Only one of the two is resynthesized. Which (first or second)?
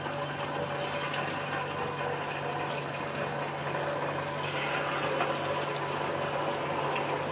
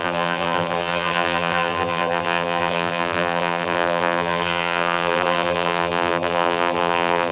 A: second